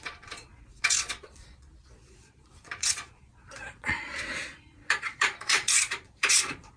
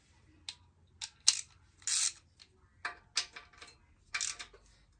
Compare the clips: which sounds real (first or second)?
second